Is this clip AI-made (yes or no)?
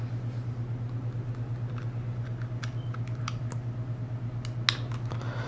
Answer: no